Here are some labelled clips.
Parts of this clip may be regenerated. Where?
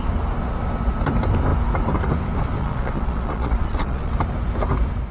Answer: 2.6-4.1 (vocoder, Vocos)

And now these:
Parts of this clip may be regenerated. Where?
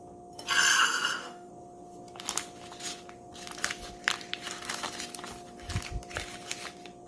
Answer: 0.7-1.5 (autoencoder, DAC-VAE)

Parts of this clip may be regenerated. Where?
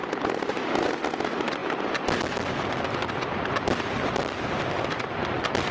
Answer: 0.0-0.5 (vocoder, BigVGAN v2)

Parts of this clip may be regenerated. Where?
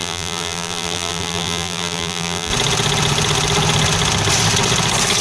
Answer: 0.0-2.5 (vocoder, BigVGAN v2)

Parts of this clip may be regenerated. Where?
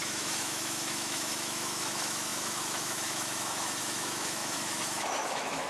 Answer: 0.0-5.7 (autoencoder, DAC-VAE)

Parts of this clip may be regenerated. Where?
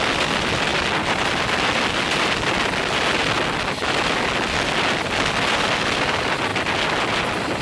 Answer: none